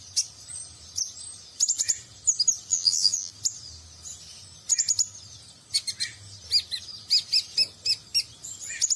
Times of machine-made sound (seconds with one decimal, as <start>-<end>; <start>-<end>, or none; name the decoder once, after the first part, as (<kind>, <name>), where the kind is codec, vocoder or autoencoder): 2.7-3.3 (vocoder, BigVGAN v2)